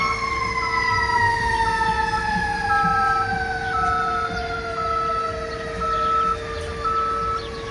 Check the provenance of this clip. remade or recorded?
recorded